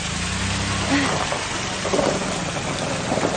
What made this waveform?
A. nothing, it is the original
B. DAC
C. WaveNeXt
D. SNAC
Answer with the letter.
A